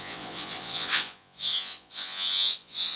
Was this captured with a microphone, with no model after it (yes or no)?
no